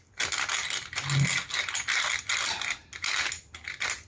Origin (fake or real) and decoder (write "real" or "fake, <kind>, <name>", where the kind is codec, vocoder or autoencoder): real